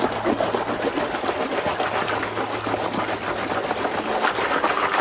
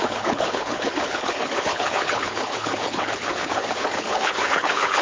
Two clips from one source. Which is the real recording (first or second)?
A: first